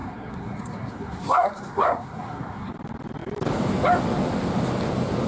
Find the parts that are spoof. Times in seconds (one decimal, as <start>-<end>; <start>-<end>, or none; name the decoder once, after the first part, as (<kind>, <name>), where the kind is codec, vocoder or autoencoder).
0.0-2.7 (codec, SNAC)